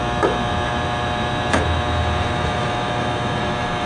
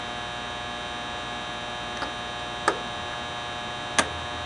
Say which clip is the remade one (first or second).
first